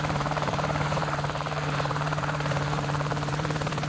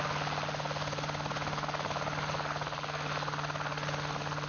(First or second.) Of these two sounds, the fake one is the first